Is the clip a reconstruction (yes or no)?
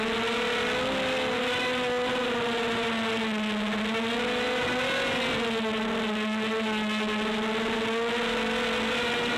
no